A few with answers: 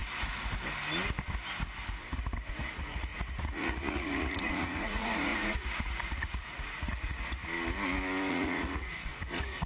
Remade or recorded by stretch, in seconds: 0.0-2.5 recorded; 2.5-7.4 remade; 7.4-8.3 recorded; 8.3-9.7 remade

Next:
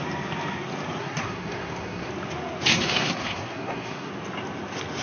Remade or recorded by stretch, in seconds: 0.0-1.0 recorded; 1.0-2.1 remade; 2.1-2.7 recorded; 2.7-4.1 remade; 4.1-5.0 recorded